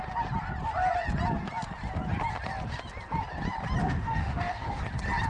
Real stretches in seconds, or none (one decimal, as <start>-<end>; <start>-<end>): 0.0-3.8; 4.8-5.3